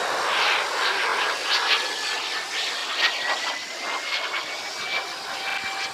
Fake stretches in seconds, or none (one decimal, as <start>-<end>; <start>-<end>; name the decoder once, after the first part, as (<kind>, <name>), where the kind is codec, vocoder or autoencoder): none